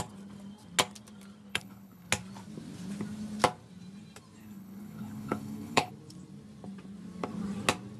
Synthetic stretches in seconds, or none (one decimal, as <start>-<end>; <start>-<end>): 1.5-2.1; 4.4-5.9